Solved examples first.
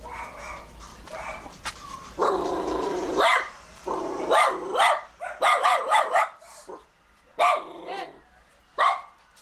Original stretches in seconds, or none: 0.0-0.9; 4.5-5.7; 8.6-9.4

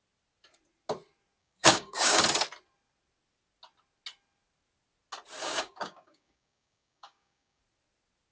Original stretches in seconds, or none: 0.0-1.4; 2.2-5.4; 7.6-8.3

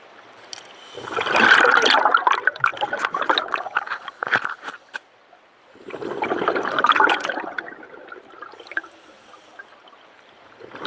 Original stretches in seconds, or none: 0.0-10.9

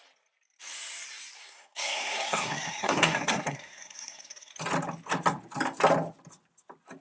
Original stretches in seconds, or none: 0.0-1.4; 4.5-7.0